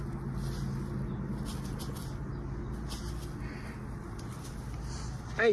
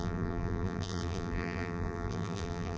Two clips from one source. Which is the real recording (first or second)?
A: first